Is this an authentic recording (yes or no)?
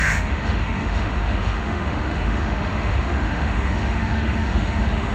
no